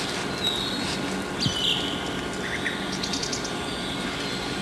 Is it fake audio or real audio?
real